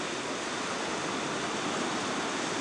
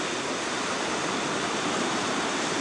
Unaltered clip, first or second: first